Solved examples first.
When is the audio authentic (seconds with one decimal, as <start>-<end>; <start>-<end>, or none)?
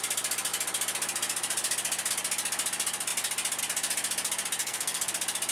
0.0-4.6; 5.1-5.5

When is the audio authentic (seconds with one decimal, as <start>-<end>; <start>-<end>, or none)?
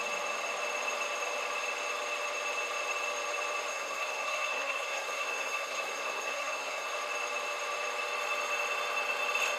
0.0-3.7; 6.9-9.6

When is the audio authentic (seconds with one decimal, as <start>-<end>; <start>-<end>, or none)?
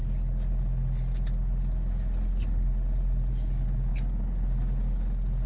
0.0-5.5